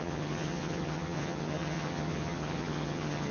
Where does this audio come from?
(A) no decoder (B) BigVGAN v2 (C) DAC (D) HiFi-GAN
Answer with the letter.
D